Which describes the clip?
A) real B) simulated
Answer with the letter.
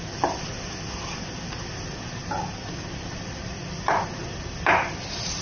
A